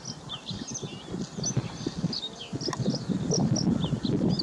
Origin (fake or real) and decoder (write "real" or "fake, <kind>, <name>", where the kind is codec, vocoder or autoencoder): real